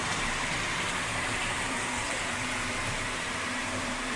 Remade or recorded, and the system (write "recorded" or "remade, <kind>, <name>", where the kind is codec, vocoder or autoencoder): remade, vocoder, BigVGAN v2